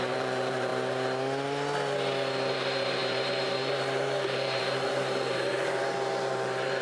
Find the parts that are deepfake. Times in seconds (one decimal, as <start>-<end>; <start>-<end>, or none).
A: 0.0-0.7; 2.5-6.8